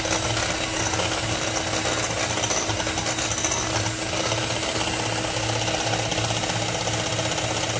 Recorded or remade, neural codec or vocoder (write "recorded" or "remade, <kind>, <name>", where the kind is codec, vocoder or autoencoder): recorded